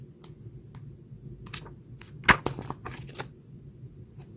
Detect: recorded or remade recorded